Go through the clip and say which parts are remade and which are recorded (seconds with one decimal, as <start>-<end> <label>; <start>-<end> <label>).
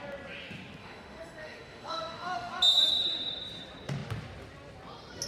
0.0-0.8 recorded; 0.8-2.5 remade; 2.5-5.3 recorded